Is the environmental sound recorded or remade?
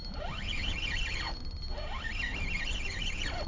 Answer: recorded